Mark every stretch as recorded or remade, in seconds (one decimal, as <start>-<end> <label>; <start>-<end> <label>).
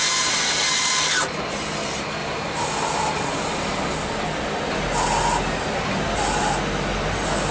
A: 0.0-2.2 recorded; 2.2-3.8 remade; 3.8-7.5 recorded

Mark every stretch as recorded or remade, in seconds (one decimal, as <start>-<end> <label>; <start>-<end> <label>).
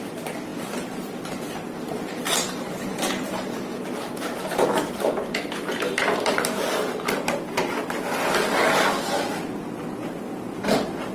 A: 0.0-0.5 recorded; 0.5-3.8 remade; 3.8-11.1 recorded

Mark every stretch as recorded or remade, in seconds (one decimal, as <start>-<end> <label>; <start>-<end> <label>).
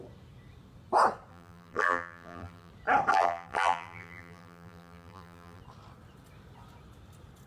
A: 0.0-1.3 recorded; 1.3-2.7 remade; 2.7-3.1 recorded; 3.1-5.6 remade; 5.6-7.5 recorded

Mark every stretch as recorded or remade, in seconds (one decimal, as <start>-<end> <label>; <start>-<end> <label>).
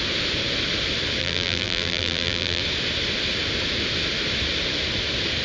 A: 0.0-1.2 recorded; 1.2-2.6 remade; 2.6-5.4 recorded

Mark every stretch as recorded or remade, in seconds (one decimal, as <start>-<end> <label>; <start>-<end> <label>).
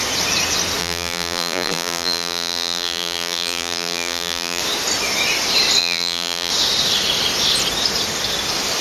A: 0.0-0.8 recorded; 0.8-4.6 remade; 4.6-5.8 recorded; 5.8-6.5 remade; 6.5-8.8 recorded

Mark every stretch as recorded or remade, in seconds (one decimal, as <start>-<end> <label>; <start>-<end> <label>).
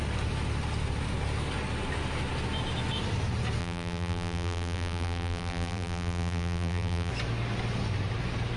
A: 0.0-3.6 recorded; 3.6-7.1 remade; 7.1-8.6 recorded